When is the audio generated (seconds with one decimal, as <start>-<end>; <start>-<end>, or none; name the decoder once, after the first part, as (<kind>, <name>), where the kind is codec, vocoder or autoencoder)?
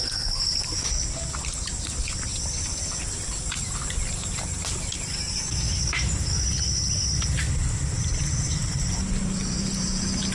none